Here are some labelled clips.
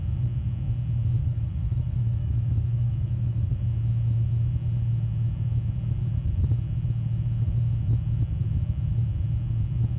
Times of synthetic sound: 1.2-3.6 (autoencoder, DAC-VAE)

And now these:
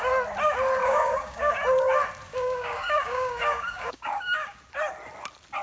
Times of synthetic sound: 0.8-1.5 (codec, DAC); 2.3-4.6

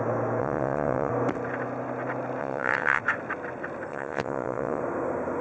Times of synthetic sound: 0.4-1.1 (vocoder, WaveNeXt); 2.4-3.0; 3.9-4.8

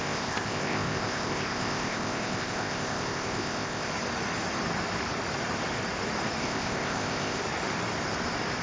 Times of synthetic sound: 0.0-3.9 (codec, ZipCodec); 6.4-7.4

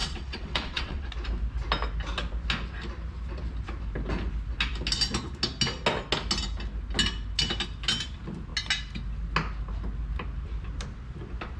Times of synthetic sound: 0.0-1.1 (vocoder, WaveNeXt)

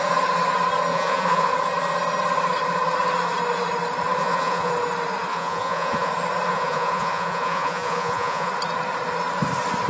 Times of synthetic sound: 0.9-1.5 (vocoder, Vocos); 4.2-4.7; 5.3-6.1; 6.5-8.5

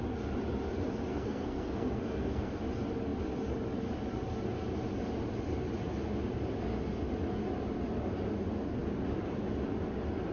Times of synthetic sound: 1.1-2.6 (codec, SNAC)

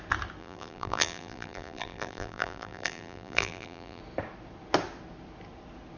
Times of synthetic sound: 0.4-4.0 (vocoder, BigVGAN v2)